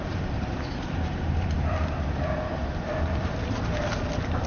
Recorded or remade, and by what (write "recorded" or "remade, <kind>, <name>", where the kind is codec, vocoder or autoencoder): remade, vocoder, BigVGAN v2